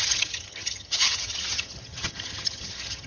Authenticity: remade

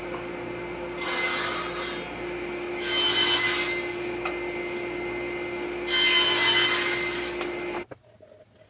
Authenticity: recorded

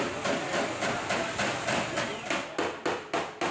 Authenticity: recorded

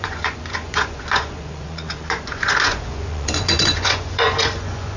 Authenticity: remade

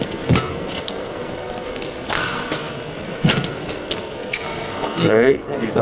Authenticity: remade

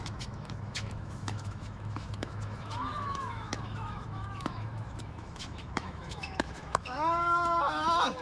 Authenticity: remade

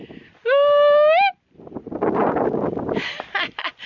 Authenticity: recorded